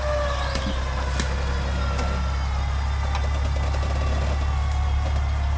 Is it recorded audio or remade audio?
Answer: recorded